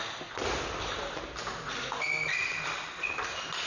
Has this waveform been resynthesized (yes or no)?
no